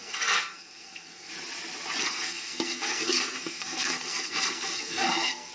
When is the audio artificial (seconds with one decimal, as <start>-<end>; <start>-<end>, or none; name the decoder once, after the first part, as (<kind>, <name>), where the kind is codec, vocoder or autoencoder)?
0.0-1.3 (codec, SNAC); 2.0-5.5